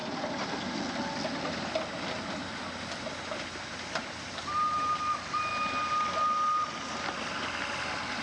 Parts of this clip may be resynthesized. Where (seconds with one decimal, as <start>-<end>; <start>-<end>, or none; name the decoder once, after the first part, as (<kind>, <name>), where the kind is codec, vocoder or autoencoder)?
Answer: none